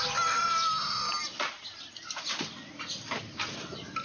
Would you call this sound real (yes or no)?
yes